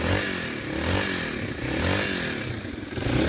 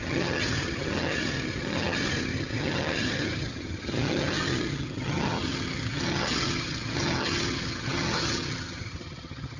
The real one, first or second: first